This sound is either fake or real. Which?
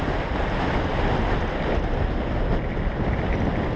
real